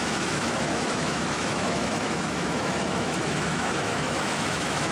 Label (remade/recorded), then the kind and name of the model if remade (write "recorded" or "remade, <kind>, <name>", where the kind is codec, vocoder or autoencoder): remade, autoencoder, DAC-VAE